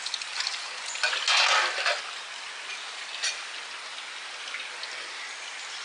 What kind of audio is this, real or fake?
real